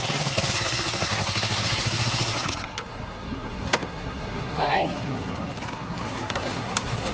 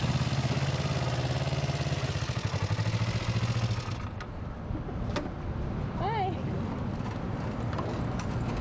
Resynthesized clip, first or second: first